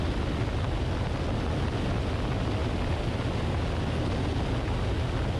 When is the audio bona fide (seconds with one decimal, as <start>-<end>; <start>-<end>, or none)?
0.0-5.4

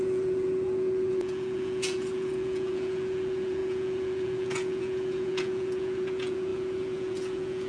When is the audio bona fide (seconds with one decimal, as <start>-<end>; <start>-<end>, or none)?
none

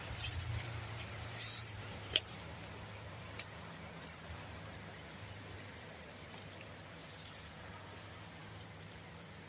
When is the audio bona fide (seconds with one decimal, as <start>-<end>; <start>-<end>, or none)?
none

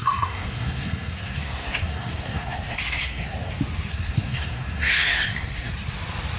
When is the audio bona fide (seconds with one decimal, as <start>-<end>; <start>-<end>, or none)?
3.5-3.9; 5.7-6.4

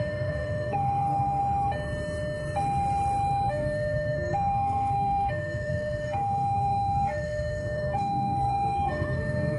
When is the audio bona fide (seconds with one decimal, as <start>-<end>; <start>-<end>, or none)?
1.4-3.5

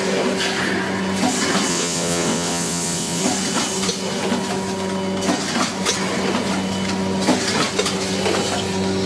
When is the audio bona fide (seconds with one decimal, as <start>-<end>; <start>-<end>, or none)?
0.0-1.7; 3.2-9.1

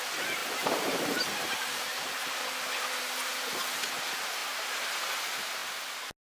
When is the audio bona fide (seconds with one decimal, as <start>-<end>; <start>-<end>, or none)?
0.0-0.4; 2.4-6.3